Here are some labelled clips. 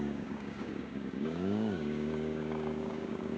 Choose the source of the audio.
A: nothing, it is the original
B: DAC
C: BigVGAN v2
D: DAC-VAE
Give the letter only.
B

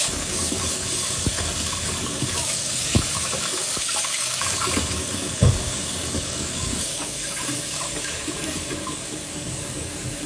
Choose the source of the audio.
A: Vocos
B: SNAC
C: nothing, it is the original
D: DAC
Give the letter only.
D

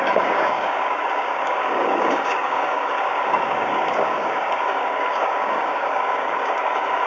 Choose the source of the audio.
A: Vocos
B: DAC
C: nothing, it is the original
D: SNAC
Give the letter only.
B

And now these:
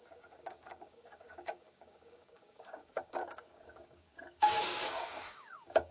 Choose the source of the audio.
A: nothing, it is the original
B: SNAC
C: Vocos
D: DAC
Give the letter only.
D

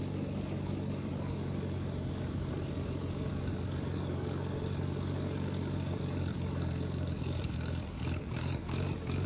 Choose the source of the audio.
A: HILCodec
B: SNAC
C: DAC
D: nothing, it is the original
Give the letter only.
C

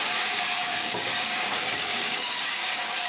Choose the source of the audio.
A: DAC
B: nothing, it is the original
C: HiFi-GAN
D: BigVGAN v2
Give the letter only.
A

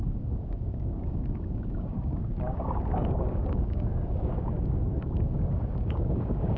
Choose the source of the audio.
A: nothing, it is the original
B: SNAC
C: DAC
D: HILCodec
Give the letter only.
C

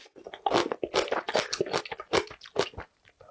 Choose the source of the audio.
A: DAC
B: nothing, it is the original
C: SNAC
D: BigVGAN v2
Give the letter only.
B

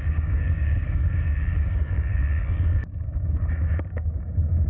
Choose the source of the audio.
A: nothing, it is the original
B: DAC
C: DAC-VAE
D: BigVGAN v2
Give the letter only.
B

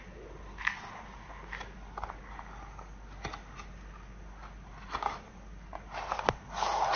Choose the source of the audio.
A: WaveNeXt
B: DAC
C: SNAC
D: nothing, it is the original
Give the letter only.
D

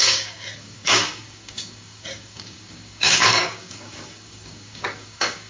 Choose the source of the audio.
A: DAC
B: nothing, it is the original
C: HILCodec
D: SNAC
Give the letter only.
A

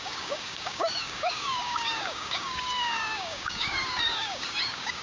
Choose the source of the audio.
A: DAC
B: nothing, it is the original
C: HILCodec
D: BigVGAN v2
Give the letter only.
A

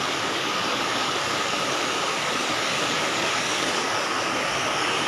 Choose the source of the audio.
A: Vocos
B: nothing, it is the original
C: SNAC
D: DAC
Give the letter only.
D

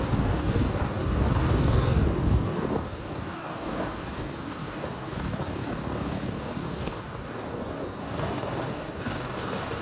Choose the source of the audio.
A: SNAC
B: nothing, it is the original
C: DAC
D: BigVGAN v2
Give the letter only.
C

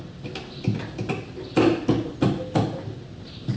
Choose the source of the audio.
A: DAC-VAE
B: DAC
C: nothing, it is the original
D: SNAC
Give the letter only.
C